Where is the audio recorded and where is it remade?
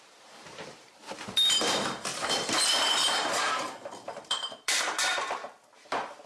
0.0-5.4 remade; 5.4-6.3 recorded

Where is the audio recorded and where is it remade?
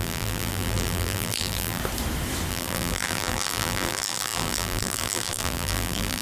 0.0-1.8 remade; 1.8-2.5 recorded; 2.5-6.2 remade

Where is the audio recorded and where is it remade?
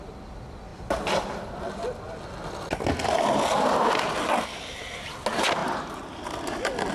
0.0-5.6 recorded; 5.6-6.2 remade; 6.2-6.9 recorded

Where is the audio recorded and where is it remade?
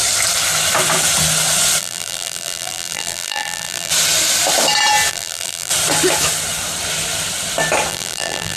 0.0-1.8 recorded; 1.8-3.9 remade; 3.9-5.1 recorded; 5.1-5.7 remade; 5.7-7.9 recorded; 7.9-8.6 remade